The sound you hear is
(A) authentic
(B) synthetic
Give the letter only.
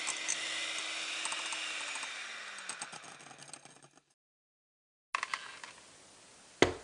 A